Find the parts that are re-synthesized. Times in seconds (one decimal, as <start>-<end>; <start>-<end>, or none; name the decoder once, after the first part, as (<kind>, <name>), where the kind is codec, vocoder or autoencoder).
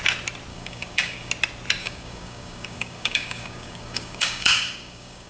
0.5-1.3 (codec, DAC); 1.8-5.3